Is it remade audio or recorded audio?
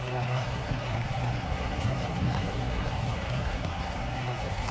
remade